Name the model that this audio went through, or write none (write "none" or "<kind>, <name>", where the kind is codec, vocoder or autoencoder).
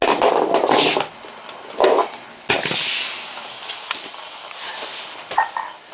none